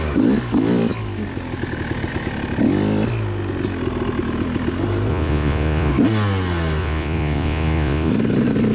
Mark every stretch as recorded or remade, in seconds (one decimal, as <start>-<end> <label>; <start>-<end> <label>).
0.0-5.1 recorded; 5.1-5.9 remade; 5.9-6.8 recorded; 6.8-8.1 remade; 8.1-8.7 recorded